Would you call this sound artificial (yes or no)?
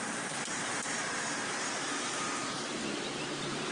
yes